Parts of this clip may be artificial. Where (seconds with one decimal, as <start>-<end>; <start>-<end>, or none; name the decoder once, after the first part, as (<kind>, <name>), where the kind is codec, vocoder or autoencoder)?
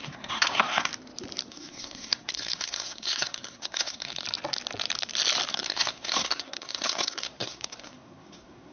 0.0-0.9 (codec, SNAC); 1.5-4.2; 5.5-8.7